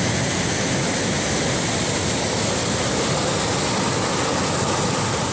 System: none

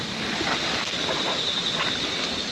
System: none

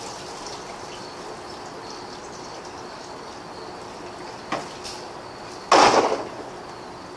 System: none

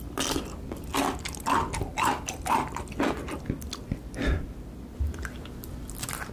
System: none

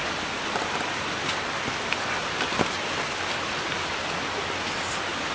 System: none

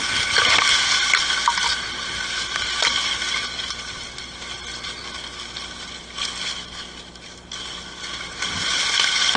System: none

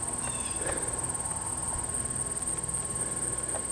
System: none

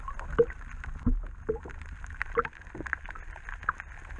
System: none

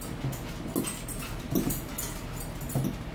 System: none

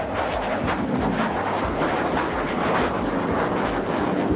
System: none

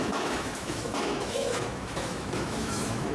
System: autoencoder, DAC-VAE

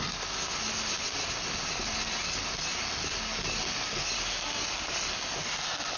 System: none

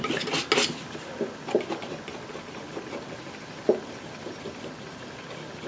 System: none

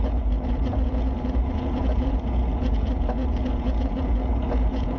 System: vocoder, Vocos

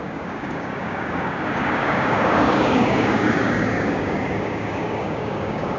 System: codec, DAC